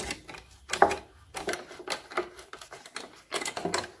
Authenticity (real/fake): real